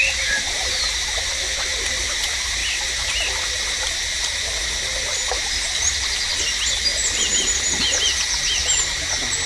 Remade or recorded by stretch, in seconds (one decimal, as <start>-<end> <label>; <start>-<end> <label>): 0.0-9.5 recorded